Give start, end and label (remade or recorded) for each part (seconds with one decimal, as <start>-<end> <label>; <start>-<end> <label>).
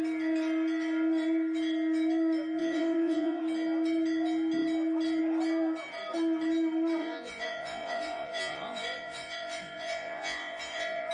0.0-2.6 recorded; 2.6-3.4 remade; 3.4-7.0 recorded; 7.0-11.1 remade